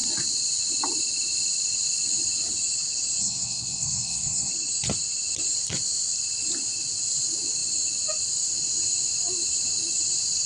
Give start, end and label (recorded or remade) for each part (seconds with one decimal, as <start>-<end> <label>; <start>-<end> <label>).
0.0-3.2 recorded; 3.2-4.5 remade; 4.5-10.5 recorded